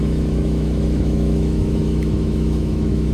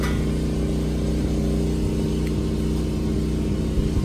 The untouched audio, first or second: second